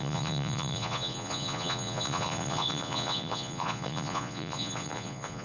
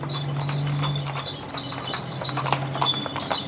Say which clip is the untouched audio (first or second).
second